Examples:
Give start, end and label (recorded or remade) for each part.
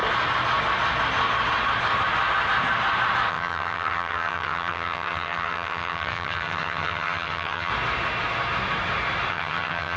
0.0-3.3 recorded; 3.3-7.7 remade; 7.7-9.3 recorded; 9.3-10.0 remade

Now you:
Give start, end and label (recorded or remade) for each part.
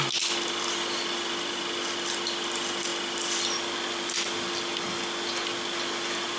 0.0-6.4 recorded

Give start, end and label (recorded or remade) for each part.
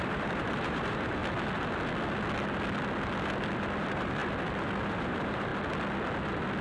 0.0-1.2 remade; 1.2-3.8 recorded; 3.8-4.2 remade; 4.2-4.9 recorded; 4.9-5.5 remade; 5.5-6.6 recorded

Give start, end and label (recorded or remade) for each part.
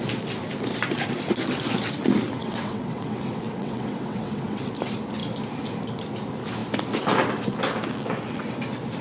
0.0-2.4 recorded; 2.4-4.7 remade; 4.7-9.0 recorded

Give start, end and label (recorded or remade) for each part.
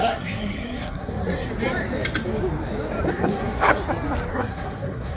0.0-1.5 remade; 1.5-3.1 recorded; 3.1-3.8 remade; 3.8-4.3 recorded; 4.3-5.2 remade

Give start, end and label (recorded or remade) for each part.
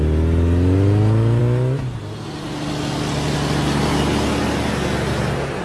0.0-5.6 recorded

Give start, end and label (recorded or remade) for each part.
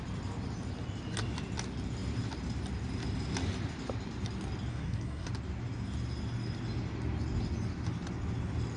0.0-4.7 recorded; 4.7-5.3 remade; 5.3-8.8 recorded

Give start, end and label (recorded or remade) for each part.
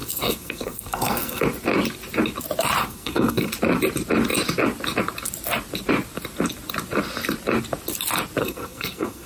0.0-1.4 remade; 1.4-2.8 recorded; 2.8-3.5 remade; 3.5-8.4 recorded; 8.4-9.3 remade